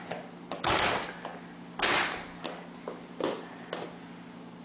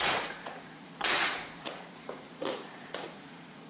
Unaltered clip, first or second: first